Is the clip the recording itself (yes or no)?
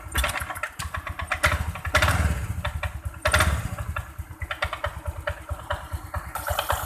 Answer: yes